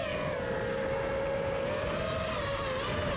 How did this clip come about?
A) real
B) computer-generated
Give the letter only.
A